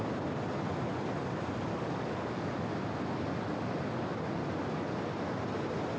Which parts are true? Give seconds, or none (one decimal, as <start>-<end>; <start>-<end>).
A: 0.0-1.7; 2.5-6.0